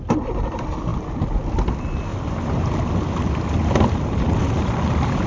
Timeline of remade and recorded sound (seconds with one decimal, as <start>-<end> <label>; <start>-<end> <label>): 0.0-0.9 recorded; 0.9-1.4 remade; 1.4-2.1 recorded; 2.1-2.9 remade; 2.9-4.4 recorded; 4.4-5.3 remade